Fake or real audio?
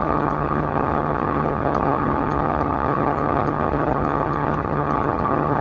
fake